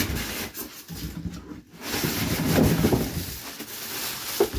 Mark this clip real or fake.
real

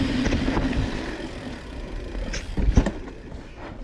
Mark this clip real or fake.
real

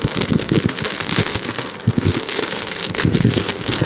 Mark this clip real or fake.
fake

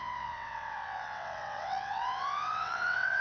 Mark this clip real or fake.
fake